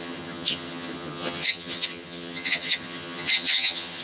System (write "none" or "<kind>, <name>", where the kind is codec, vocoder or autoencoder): vocoder, HiFi-GAN